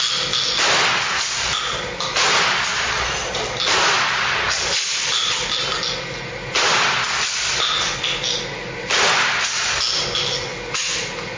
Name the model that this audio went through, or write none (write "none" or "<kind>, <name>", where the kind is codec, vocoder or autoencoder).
none